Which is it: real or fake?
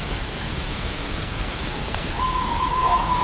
fake